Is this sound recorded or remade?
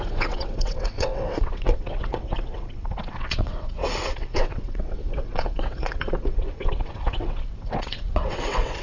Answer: remade